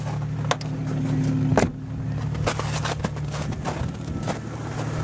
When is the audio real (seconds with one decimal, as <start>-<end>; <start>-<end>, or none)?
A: 0.0-5.0